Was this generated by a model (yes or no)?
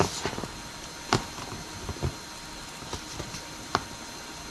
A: no